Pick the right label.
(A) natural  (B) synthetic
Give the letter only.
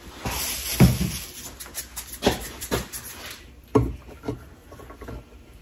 A